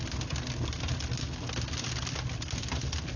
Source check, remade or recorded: recorded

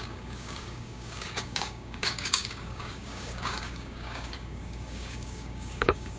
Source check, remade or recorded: remade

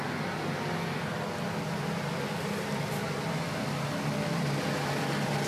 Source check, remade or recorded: recorded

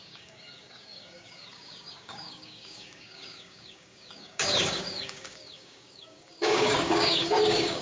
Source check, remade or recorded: remade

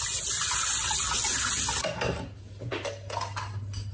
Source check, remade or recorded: recorded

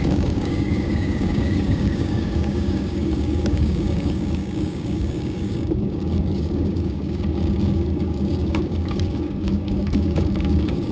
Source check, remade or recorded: remade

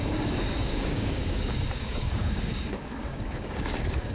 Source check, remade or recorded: remade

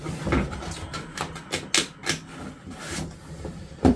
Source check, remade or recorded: recorded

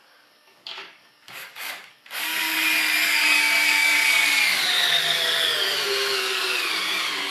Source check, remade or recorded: remade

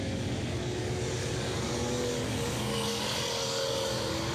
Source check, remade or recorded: remade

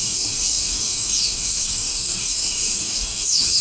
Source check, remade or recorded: remade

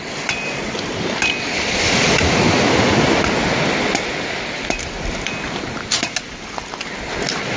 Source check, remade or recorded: recorded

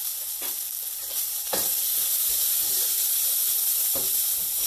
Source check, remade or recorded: recorded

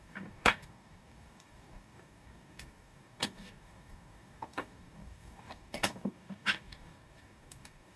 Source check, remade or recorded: remade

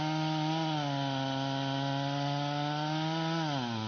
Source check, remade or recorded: recorded